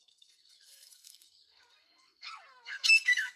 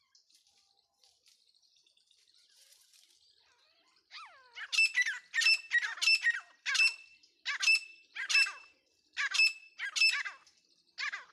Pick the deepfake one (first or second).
first